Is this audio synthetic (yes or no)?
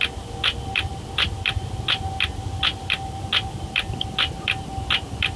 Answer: no